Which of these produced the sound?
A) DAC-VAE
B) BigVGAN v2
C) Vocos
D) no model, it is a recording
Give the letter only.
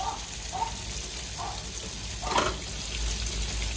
D